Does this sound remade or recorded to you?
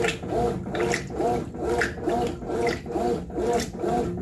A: recorded